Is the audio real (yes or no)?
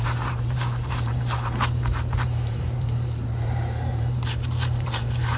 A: no